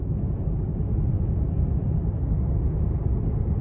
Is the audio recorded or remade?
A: recorded